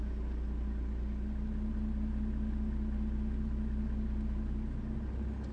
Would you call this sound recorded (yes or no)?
yes